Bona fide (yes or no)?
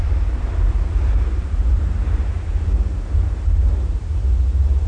no